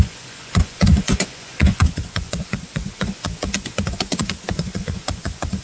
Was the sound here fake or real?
fake